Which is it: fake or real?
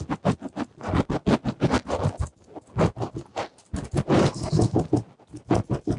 real